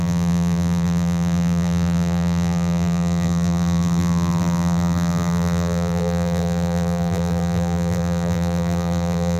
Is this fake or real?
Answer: fake